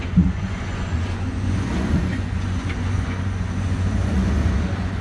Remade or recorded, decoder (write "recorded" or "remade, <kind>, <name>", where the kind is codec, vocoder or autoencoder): remade, vocoder, Vocos